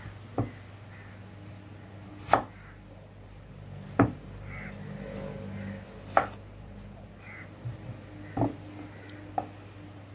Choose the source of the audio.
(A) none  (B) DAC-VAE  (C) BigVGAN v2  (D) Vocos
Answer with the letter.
A